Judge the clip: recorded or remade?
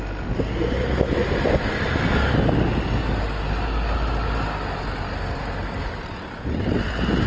recorded